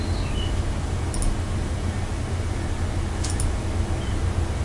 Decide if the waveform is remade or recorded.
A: recorded